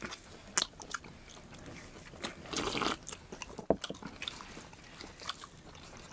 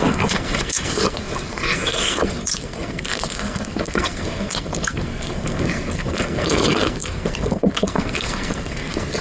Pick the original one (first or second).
first